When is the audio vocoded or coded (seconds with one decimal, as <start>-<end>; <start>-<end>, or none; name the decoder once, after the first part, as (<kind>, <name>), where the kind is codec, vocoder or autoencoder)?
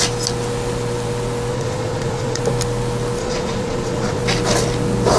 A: 1.5-2.4 (vocoder, Vocos); 3.2-4.2